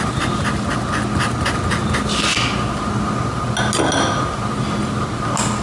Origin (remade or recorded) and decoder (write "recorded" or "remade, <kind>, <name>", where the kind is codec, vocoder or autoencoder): recorded